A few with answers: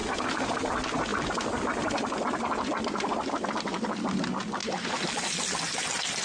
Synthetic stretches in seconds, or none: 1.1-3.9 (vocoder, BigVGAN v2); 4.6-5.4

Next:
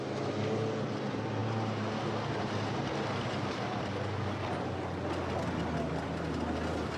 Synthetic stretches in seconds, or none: none